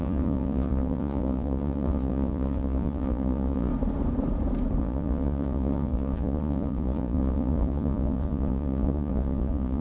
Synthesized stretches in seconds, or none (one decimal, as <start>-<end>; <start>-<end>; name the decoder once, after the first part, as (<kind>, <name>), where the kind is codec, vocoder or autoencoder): 0.0-3.7 (vocoder, Vocos); 4.8-9.8